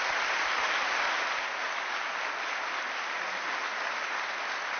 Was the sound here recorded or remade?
recorded